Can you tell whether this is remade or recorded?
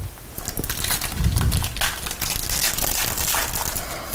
recorded